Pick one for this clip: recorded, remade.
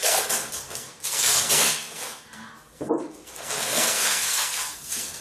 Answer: remade